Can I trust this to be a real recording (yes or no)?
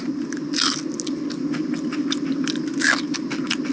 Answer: yes